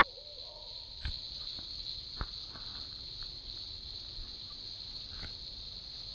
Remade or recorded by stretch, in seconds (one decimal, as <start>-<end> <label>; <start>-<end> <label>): 0.0-6.1 recorded